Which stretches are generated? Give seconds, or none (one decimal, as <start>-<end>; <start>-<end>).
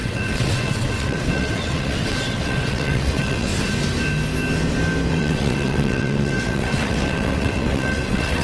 0.0-3.5; 5.1-8.4